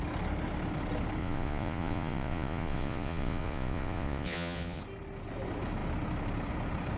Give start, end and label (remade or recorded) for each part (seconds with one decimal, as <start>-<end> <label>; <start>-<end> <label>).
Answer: 0.0-1.2 recorded; 1.2-4.8 remade; 4.8-7.0 recorded